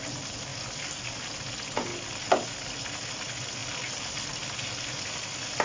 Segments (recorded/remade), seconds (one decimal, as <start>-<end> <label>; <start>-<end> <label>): 0.0-5.6 recorded